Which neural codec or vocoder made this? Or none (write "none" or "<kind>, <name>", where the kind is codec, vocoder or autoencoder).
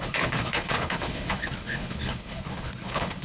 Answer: codec, HILCodec